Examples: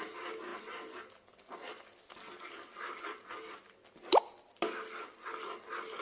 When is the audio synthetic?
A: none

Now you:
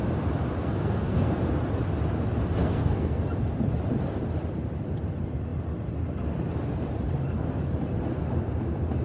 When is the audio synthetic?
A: 0.6-1.4 (codec, SNAC); 2.6-3.2

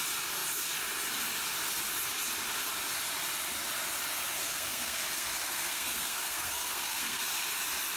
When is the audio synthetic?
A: 4.4-7.2 (codec, SNAC)

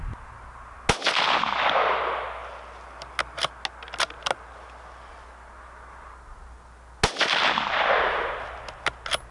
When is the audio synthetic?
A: none

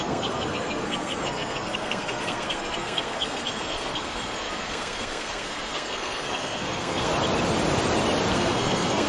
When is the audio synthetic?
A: 0.0-7.1 (codec, SNAC); 8.3-9.1